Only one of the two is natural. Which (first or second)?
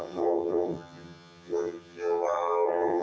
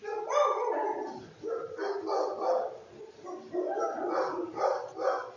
second